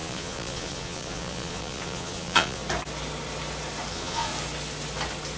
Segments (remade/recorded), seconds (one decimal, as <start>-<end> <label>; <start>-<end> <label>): 0.0-2.6 remade; 2.6-3.9 recorded; 3.9-4.3 remade; 4.3-5.4 recorded